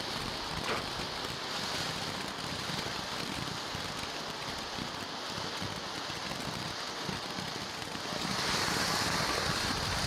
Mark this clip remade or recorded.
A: recorded